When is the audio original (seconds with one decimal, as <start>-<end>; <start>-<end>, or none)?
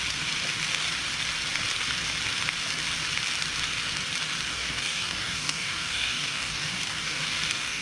0.0-4.5